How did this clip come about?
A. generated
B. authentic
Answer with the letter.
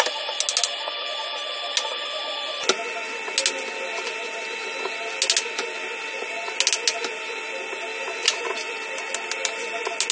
B